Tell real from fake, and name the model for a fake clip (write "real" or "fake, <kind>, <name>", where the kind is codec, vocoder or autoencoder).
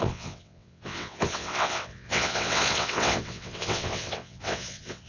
fake, vocoder, WaveNeXt